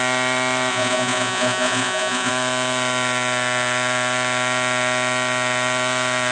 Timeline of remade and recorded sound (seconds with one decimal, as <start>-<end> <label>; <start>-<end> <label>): 0.0-0.7 recorded; 0.7-2.3 remade; 2.3-6.3 recorded